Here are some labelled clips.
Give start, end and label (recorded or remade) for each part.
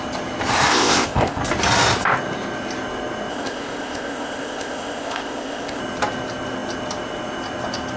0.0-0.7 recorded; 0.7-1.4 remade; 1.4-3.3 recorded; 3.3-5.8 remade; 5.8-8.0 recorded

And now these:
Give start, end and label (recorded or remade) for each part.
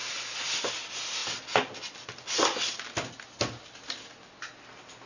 0.0-5.1 recorded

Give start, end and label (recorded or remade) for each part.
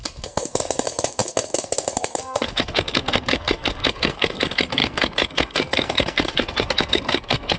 0.0-7.6 remade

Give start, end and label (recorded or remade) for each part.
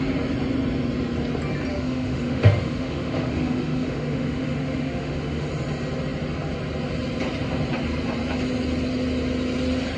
0.0-1.7 recorded; 1.7-5.5 remade; 5.5-10.0 recorded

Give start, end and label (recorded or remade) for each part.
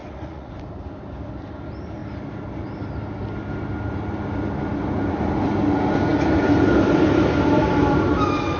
0.0-0.5 remade; 0.5-8.6 recorded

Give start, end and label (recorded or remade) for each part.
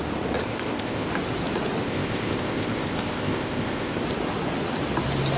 0.0-0.4 recorded; 0.4-1.1 remade; 1.1-1.8 recorded; 1.8-4.0 remade; 4.0-5.4 recorded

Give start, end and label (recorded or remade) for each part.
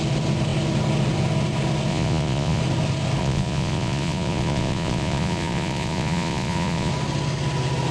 0.0-1.9 recorded; 1.9-2.6 remade; 2.6-3.2 recorded; 3.2-6.9 remade; 6.9-7.9 recorded